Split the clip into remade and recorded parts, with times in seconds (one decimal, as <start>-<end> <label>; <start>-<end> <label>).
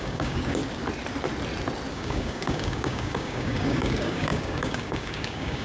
0.0-0.6 remade; 0.6-1.9 recorded; 1.9-5.6 remade